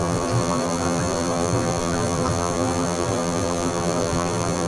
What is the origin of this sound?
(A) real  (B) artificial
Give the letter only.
B